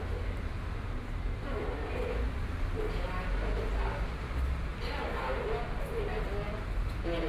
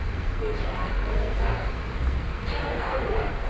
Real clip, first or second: first